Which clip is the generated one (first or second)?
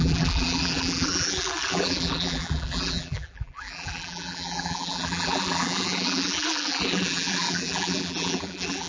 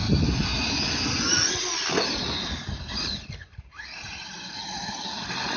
first